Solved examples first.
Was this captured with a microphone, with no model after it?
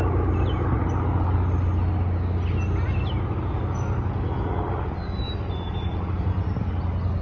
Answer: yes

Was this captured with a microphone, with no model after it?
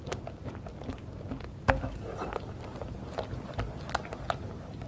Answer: yes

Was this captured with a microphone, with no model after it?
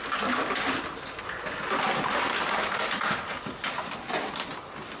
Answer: yes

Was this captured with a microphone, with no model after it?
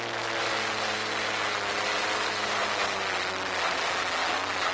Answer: yes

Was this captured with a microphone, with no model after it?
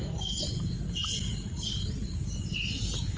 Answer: yes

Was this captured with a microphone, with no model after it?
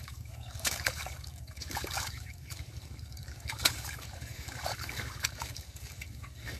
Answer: no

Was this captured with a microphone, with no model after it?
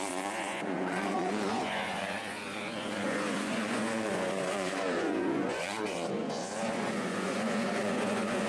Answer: no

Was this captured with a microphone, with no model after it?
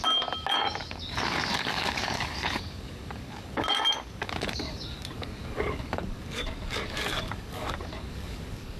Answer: no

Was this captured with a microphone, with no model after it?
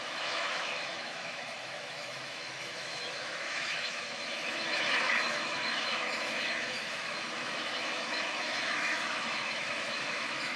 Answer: no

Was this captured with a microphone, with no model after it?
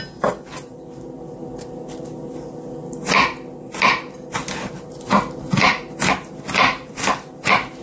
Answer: yes